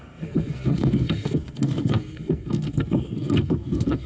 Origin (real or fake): fake